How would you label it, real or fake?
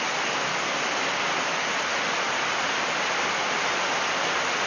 real